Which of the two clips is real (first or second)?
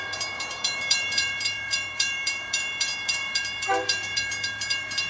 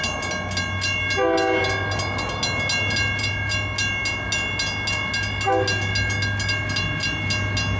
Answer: second